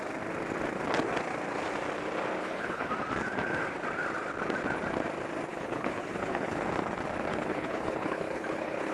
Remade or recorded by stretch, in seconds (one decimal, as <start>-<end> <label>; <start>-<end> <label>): 0.0-2.4 recorded; 2.4-2.9 remade; 2.9-5.5 recorded; 5.5-6.6 remade; 6.6-7.3 recorded; 7.3-8.9 remade